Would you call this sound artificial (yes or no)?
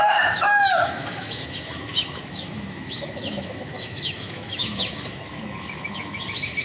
yes